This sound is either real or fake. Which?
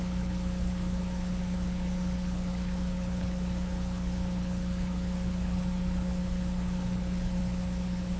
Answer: fake